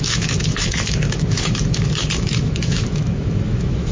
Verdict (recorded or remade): remade